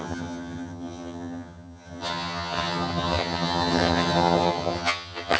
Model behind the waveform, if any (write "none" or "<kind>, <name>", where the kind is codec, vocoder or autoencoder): vocoder, HiFi-GAN